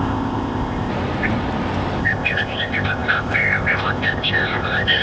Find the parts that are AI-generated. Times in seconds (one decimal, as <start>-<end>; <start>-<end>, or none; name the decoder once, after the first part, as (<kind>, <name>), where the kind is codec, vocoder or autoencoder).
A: 0.0-0.9 (codec, ZipCodec); 2.0-5.0